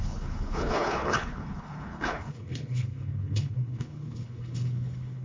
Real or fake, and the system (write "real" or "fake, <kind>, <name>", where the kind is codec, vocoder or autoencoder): fake, codec, HILCodec